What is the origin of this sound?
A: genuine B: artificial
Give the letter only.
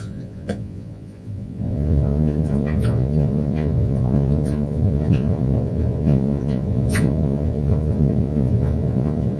B